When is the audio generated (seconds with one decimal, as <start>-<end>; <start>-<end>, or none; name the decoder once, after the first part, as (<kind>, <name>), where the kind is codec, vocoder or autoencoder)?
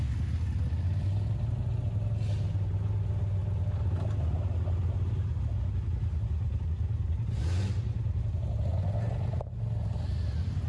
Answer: none